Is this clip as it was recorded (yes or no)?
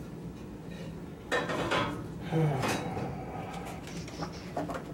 yes